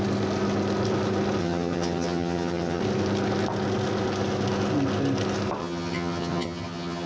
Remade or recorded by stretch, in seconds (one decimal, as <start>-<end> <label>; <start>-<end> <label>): 0.0-1.4 recorded; 1.4-2.8 remade; 2.8-5.6 recorded; 5.6-7.1 remade